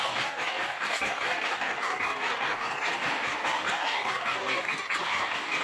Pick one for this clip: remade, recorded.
remade